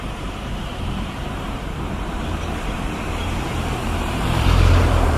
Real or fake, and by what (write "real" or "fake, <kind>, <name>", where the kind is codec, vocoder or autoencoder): fake, vocoder, BigVGAN v2